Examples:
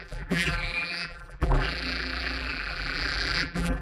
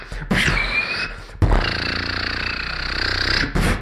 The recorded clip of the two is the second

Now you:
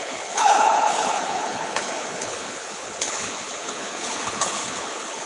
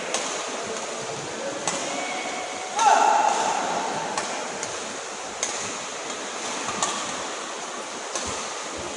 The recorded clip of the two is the second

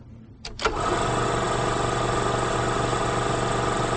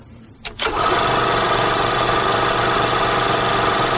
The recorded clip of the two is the first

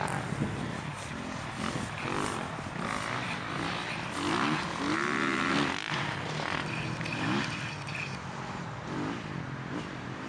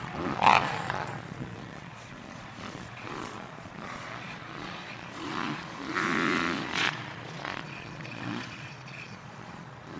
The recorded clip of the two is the first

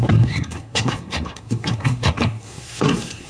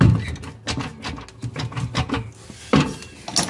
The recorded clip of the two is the second